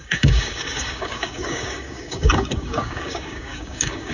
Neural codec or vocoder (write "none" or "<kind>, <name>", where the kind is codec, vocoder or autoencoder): codec, DAC